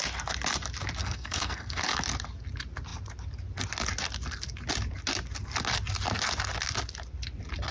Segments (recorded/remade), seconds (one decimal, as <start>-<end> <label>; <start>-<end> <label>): 0.0-1.0 recorded; 1.0-1.8 remade; 1.8-7.7 recorded